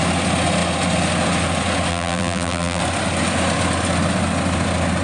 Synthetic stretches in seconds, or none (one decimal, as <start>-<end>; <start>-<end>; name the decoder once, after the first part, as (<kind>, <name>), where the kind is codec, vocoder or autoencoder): 1.9-2.8 (vocoder, BigVGAN v2)